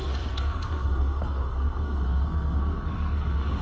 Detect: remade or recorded remade